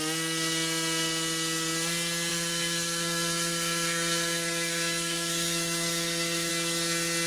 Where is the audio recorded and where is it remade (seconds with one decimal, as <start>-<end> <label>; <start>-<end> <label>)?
0.0-2.3 recorded; 2.3-6.5 remade; 6.5-7.3 recorded